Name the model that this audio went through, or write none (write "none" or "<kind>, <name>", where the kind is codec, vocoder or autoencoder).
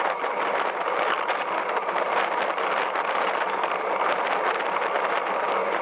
none